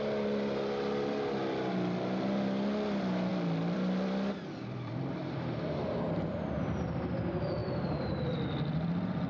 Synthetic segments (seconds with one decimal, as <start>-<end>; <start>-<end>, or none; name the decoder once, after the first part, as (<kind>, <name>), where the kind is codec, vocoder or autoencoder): 3.3-6.4 (vocoder, BigVGAN v2); 7.6-8.2